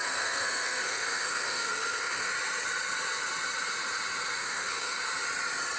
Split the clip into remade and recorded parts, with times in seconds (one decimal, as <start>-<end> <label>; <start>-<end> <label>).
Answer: 0.0-2.3 remade; 2.3-4.4 recorded; 4.4-5.0 remade; 5.0-5.8 recorded